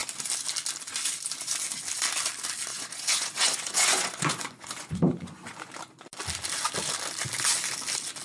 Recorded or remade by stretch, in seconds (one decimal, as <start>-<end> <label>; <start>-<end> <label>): 0.0-2.7 recorded; 2.7-5.7 remade; 5.7-8.2 recorded